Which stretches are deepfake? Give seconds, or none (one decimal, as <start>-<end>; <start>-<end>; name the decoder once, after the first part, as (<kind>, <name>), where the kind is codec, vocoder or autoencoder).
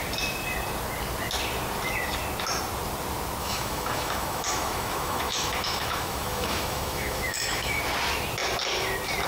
3.4-7.8 (autoencoder, DAC-VAE)